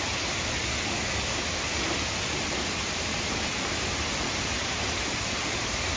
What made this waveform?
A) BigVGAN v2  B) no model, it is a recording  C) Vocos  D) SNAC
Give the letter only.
B